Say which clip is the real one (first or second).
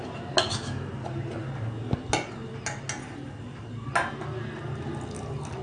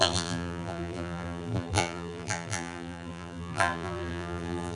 first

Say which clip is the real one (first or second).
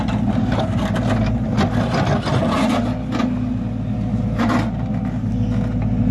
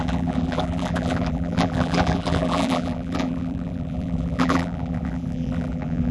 first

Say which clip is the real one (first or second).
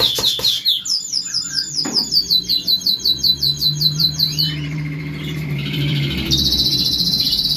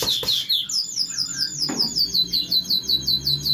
second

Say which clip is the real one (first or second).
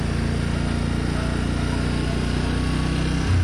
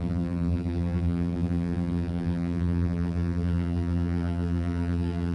first